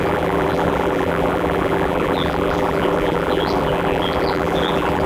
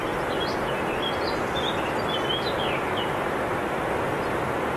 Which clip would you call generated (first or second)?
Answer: first